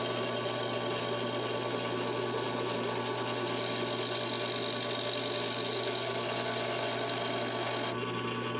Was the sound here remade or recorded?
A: recorded